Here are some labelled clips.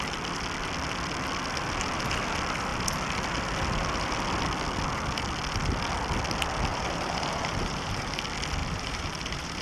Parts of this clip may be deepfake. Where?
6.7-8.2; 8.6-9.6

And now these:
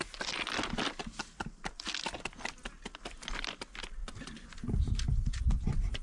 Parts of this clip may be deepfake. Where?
4.0-5.2

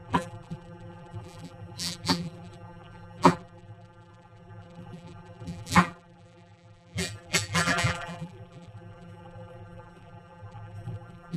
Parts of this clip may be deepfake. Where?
0.0-11.4